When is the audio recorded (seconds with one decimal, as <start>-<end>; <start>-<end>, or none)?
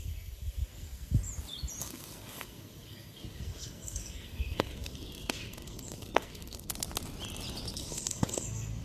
1.2-1.8; 6.7-7.7